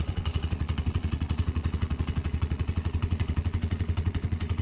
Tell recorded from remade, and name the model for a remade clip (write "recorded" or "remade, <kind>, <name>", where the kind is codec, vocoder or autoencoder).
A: remade, vocoder, Vocos